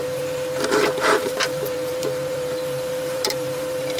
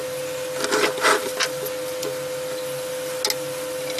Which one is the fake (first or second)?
first